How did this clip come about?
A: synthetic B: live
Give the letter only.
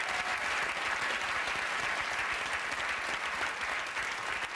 B